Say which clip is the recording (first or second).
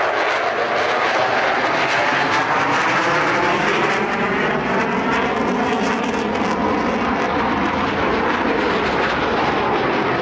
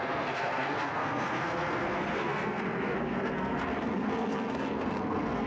first